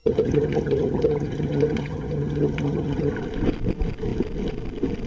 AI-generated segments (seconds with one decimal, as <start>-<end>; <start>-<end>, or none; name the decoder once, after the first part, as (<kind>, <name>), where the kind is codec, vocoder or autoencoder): 0.0-3.1 (vocoder, HiFi-GAN)